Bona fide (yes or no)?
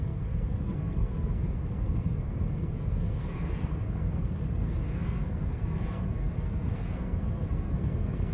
no